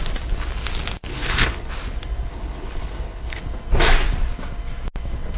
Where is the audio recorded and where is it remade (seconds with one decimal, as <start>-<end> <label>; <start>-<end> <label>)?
0.0-1.1 recorded; 1.1-1.7 remade; 1.7-2.3 recorded; 2.3-3.4 remade; 3.4-5.4 recorded